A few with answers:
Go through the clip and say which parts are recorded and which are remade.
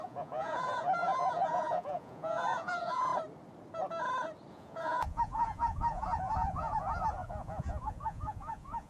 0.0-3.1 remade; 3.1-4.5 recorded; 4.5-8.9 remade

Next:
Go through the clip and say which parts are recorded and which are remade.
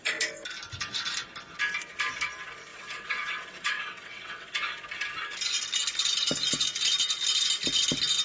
0.0-2.7 recorded; 2.7-4.5 remade; 4.5-8.2 recorded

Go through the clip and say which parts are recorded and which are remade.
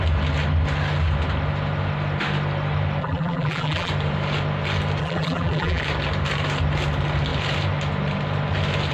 0.0-3.0 recorded; 3.0-3.9 remade; 3.9-5.0 recorded; 5.0-5.8 remade; 5.8-8.9 recorded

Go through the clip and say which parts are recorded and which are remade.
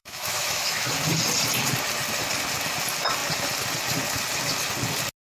0.0-0.9 remade; 0.9-5.3 recorded